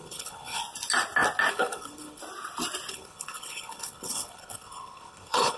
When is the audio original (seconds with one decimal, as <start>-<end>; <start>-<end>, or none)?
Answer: 0.6-1.5; 2.2-2.9